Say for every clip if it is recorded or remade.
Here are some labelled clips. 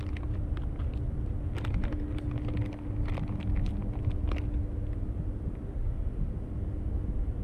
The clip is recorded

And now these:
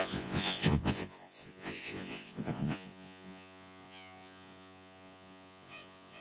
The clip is remade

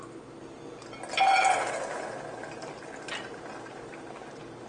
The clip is recorded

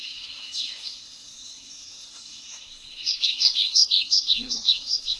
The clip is remade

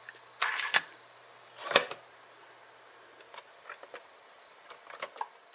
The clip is recorded